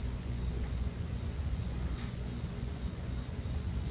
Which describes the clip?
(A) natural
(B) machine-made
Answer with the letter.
B